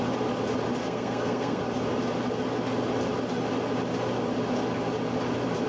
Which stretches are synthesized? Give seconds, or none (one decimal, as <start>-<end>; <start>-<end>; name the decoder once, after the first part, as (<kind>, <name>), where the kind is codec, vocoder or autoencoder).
0.8-1.6 (codec, SNAC)

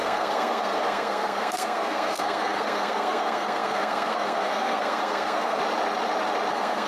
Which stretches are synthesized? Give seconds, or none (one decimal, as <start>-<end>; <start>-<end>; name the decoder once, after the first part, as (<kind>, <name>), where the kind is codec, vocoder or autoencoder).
0.0-5.6 (codec, SNAC); 6.5-6.9

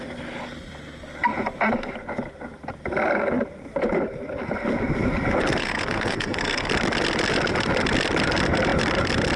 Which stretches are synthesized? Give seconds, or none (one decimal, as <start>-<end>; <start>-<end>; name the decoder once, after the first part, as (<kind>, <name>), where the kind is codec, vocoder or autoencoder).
5.6-6.7 (codec, SNAC)

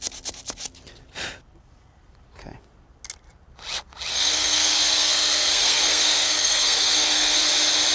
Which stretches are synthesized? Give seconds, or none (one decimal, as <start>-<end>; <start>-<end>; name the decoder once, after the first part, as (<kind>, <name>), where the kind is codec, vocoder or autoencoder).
4.1-7.5 (codec, SNAC)

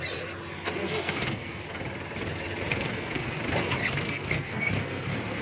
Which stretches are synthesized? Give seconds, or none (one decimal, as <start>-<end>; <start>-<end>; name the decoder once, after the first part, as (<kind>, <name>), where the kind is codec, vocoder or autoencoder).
0.8-1.6 (codec, SNAC); 2.7-3.4; 3.8-5.4